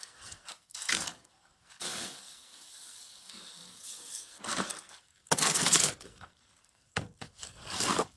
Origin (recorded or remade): remade